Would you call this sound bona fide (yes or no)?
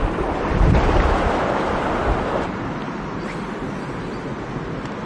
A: yes